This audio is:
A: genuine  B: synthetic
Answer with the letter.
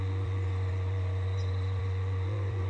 B